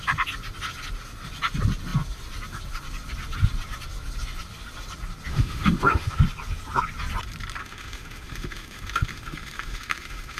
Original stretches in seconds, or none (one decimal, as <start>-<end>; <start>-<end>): 0.0-5.3; 6.2-7.6